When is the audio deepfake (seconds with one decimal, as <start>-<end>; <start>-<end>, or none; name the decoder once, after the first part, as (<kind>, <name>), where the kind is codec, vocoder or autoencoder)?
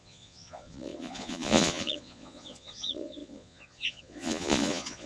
0.0-5.1 (vocoder, Vocos)